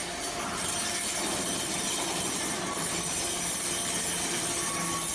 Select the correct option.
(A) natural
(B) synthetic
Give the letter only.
A